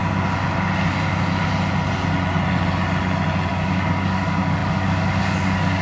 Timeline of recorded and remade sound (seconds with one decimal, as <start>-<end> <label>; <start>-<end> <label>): 0.0-3.5 recorded; 3.5-5.8 remade